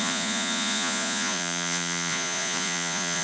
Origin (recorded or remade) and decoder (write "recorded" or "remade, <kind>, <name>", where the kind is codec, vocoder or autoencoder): remade, vocoder, Vocos